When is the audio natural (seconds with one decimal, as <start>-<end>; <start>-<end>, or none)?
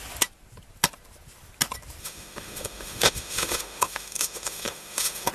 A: 0.0-2.0